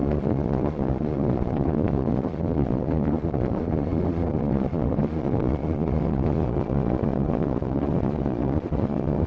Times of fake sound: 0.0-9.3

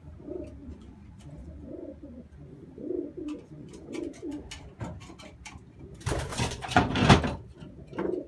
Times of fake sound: 0.6-4.5; 6.3-7.1

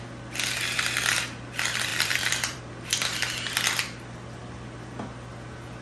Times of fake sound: 1.9-2.6

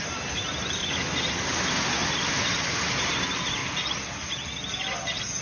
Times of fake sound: 0.0-0.8; 1.6-2.0; 3.0-3.6

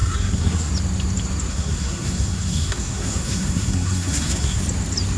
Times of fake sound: 0.0-0.7; 1.5-4.6

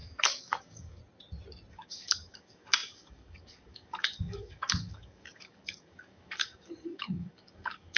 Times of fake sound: 0.0-1.0; 1.7-8.0

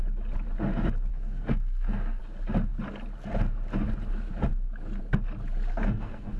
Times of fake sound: 1.1-2.2; 5.7-6.4